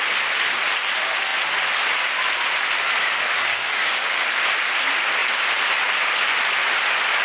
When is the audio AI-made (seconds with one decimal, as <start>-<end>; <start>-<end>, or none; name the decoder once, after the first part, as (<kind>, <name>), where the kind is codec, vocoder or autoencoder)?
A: 3.5-4.3 (codec, DAC)